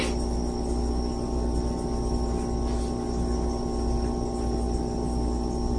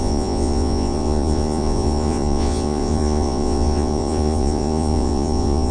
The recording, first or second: first